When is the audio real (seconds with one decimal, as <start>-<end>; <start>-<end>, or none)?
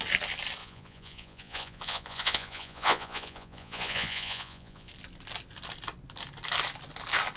0.0-0.6; 4.9-7.4